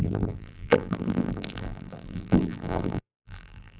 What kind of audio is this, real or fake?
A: fake